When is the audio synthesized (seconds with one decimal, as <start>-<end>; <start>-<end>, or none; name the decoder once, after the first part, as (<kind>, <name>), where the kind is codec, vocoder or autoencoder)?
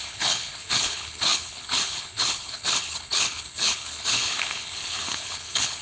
0.0-5.8 (codec, HILCodec)